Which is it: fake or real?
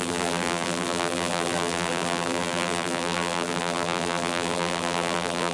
fake